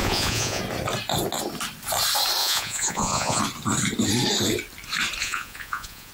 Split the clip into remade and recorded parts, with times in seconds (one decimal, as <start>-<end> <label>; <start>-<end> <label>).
0.0-0.6 remade; 0.6-2.4 recorded; 2.4-3.4 remade; 3.4-5.2 recorded; 5.2-6.1 remade